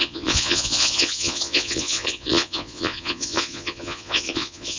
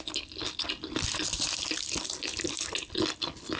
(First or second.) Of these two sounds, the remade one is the first